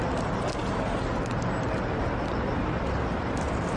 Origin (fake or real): real